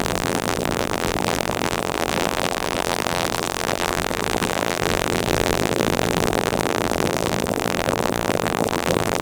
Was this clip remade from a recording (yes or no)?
yes